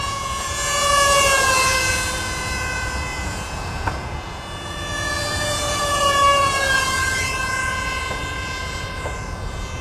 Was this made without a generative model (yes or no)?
no